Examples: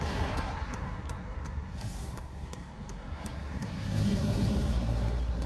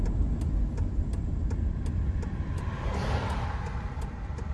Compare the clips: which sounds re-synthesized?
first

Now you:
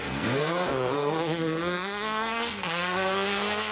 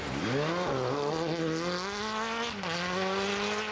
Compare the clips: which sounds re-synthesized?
first